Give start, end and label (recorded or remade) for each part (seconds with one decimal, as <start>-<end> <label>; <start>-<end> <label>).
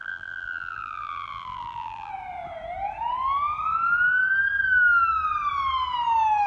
0.0-2.1 remade; 2.1-6.5 recorded